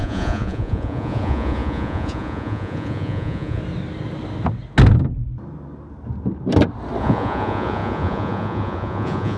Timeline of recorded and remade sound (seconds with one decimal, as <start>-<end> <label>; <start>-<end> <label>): 0.0-3.6 remade; 3.6-7.0 recorded; 7.0-9.4 remade

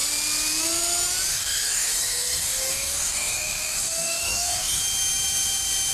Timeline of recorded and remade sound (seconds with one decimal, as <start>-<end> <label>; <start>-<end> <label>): 0.0-1.3 recorded; 1.3-4.8 remade; 4.8-5.9 recorded

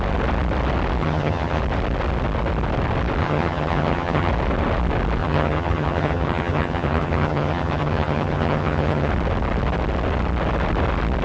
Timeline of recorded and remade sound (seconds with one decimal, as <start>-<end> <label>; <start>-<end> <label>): 0.0-1.0 recorded; 1.0-1.6 remade; 1.6-3.2 recorded; 3.2-4.3 remade; 4.3-5.2 recorded; 5.2-9.1 remade; 9.1-11.2 recorded

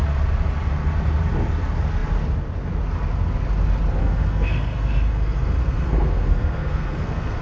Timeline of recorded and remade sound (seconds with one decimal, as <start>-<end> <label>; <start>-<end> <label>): 0.0-4.0 recorded; 4.0-7.4 remade

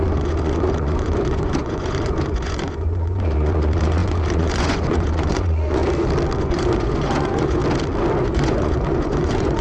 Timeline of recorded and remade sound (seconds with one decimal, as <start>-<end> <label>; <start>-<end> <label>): 0.0-5.8 remade; 5.8-6.4 recorded; 6.4-7.6 remade; 7.6-8.2 recorded; 8.2-9.6 remade